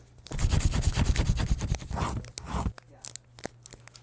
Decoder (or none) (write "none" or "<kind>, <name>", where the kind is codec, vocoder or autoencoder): none